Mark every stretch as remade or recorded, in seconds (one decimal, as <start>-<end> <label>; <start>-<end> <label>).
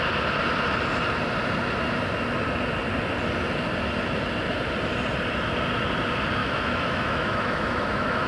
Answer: 0.0-6.4 recorded; 6.4-8.3 remade